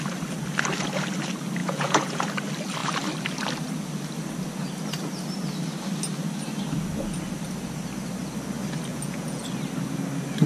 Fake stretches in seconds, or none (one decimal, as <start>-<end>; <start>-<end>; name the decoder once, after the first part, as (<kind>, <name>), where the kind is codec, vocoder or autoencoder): 1.6-2.2 (vocoder, Vocos); 8.9-9.4